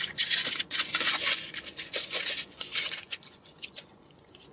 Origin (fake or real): fake